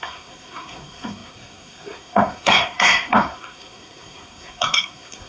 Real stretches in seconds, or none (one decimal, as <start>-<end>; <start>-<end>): none